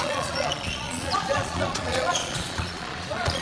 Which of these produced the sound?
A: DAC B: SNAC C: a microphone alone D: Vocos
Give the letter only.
D